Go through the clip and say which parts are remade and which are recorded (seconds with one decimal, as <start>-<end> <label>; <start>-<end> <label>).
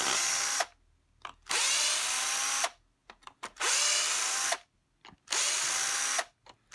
0.0-3.0 recorded; 3.0-3.8 remade; 3.8-6.7 recorded